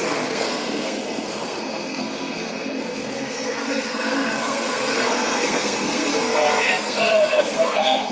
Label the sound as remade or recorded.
remade